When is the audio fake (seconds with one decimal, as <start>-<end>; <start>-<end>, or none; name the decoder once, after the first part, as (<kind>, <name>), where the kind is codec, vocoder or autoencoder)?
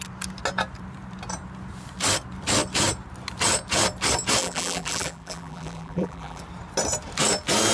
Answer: 4.4-6.4 (vocoder, BigVGAN v2)